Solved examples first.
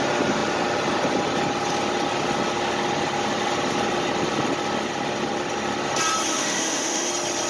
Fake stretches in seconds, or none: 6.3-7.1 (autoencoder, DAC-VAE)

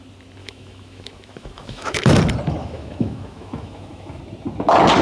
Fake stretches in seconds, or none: 0.4-2.2 (autoencoder, DAC-VAE); 2.6-4.2

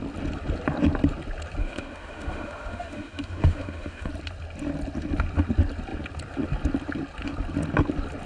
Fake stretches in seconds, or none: 1.6-4.1 (autoencoder, DAC-VAE)